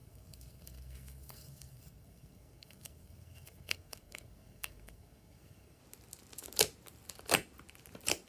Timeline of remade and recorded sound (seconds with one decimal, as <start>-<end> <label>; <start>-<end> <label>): 0.0-5.8 remade; 5.8-8.3 recorded